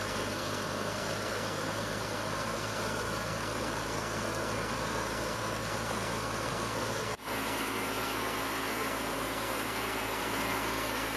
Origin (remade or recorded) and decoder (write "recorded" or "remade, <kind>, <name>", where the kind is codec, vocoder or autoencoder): remade, codec, SNAC